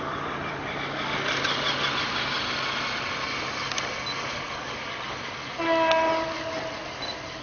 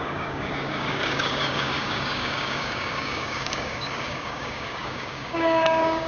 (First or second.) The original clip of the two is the first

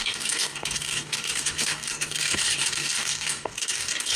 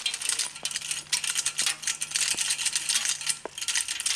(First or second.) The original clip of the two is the second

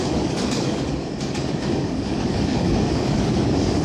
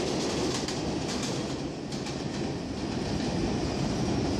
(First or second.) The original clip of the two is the second